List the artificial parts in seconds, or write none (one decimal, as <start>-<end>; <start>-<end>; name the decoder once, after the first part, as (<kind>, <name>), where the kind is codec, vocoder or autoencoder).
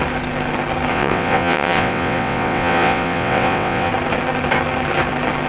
0.9-3.9 (vocoder, WaveNeXt)